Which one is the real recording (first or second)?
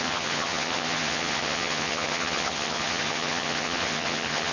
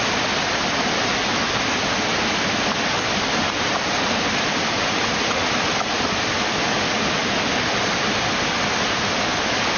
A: second